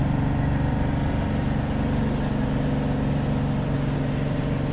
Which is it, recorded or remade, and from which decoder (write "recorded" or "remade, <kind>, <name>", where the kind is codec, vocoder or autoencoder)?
recorded